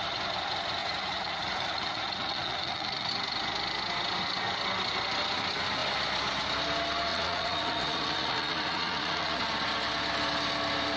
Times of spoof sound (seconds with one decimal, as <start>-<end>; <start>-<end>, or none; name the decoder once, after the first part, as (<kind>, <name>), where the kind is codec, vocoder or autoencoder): 0.8-3.1 (vocoder, Vocos); 7.1-9.4